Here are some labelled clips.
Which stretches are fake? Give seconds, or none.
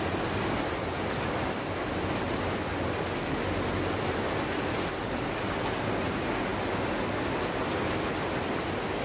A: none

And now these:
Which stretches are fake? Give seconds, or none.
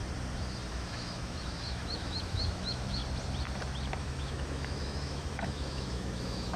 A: 0.7-3.0 (autoencoder, DAC-VAE); 4.0-6.6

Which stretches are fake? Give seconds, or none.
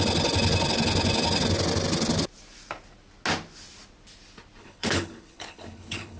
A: 4.6-6.2 (codec, HILCodec)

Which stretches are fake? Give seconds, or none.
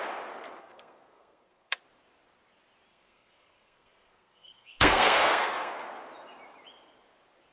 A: 0.6-1.8 (codec, SNAC); 2.9-5.7